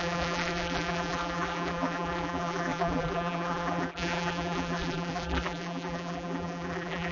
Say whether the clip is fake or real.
fake